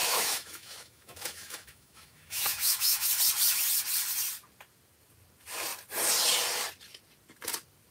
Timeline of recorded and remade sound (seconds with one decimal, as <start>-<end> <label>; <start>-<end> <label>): 0.0-3.1 remade; 3.1-7.9 recorded